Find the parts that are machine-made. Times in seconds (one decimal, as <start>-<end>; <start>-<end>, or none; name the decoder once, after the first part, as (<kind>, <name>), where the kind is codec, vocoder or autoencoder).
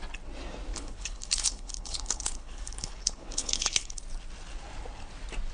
0.7-4.0 (codec, HILCodec)